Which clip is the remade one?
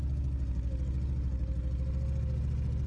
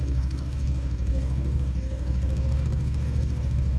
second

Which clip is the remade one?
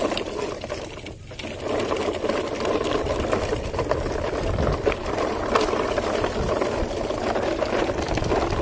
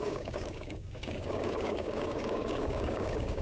second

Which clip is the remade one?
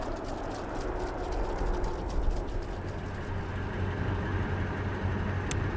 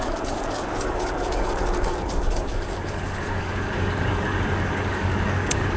second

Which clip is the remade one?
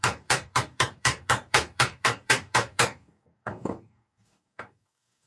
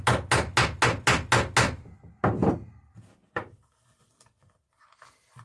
first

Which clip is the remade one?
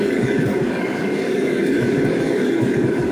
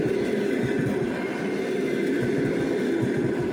first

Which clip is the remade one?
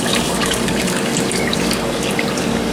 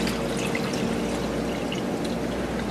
first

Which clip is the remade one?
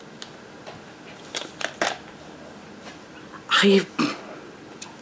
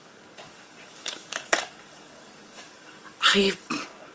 second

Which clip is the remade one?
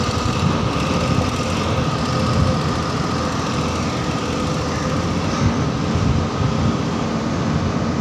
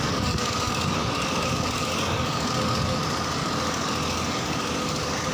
second